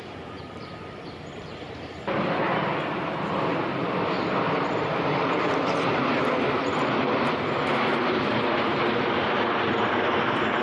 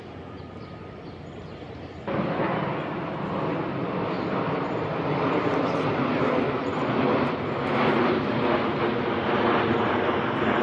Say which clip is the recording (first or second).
second